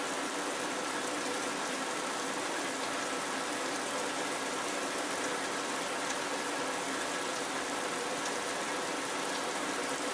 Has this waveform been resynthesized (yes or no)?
no